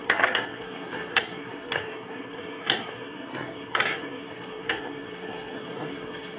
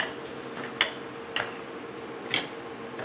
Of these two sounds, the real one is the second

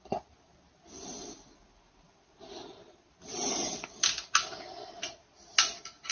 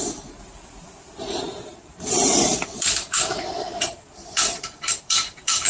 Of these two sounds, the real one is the first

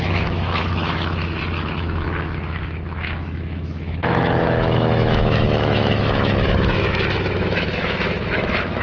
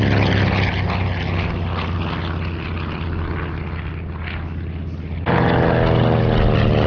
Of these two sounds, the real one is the second